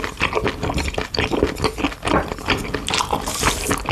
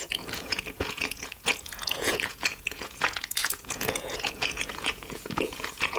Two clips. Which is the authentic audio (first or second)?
first